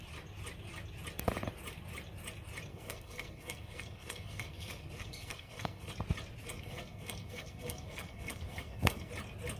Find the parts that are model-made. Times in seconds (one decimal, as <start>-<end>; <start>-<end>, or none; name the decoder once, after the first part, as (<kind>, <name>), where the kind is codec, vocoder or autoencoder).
2.7-5.9 (codec, SNAC); 6.4-9.1